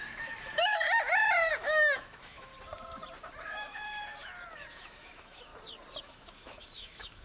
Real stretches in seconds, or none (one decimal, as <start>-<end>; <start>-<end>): 2.5-3.5; 4.0-4.7; 5.5-6.0